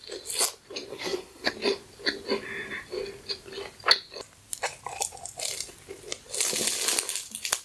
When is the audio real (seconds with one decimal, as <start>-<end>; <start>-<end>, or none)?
0.0-0.9; 1.5-7.6